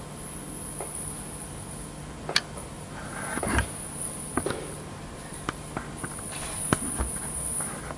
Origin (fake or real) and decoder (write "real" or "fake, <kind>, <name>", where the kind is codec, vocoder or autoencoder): real